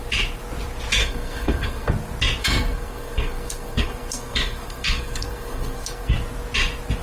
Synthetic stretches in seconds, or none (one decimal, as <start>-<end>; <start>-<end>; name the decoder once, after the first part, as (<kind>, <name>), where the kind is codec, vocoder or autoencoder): 1.0-1.9 (codec, SNAC); 2.4-6.1